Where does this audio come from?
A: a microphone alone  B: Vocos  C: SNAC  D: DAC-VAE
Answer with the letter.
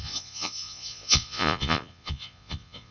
B